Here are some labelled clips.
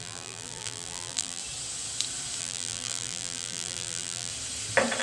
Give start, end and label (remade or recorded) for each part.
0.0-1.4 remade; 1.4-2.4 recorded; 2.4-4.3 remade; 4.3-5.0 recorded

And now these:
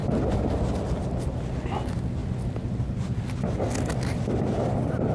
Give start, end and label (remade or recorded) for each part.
0.0-5.1 recorded

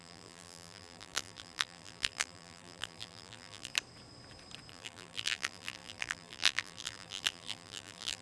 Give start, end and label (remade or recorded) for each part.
0.0-3.7 remade; 3.7-4.7 recorded; 4.7-8.2 remade

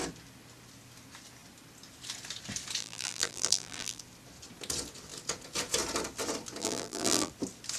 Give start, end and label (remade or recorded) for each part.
0.0-2.8 recorded; 2.8-4.0 remade; 4.0-6.6 recorded; 6.6-7.3 remade; 7.3-7.8 recorded

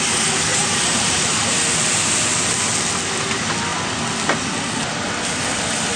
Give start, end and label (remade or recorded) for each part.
0.0-0.5 recorded; 0.5-1.4 remade; 1.4-6.0 recorded

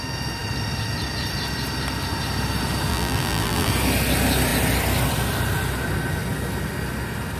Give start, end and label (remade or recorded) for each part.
0.0-2.9 recorded; 2.9-3.7 remade; 3.7-7.4 recorded

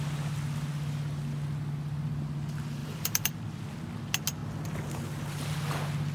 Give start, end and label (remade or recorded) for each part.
0.0-2.8 recorded; 2.8-3.3 remade; 3.3-6.1 recorded